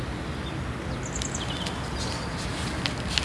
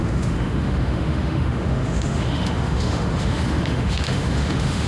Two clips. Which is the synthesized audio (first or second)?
second